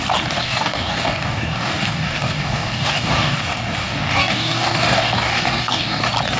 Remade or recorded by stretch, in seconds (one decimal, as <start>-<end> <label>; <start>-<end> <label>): 0.0-0.4 recorded; 0.4-3.4 remade; 3.4-3.8 recorded; 3.8-6.0 remade; 6.0-6.4 recorded